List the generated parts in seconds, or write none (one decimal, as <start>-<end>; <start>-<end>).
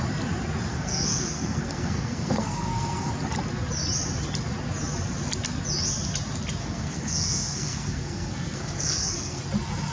0.7-3.1; 6.6-9.4